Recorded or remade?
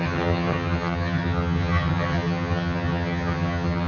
remade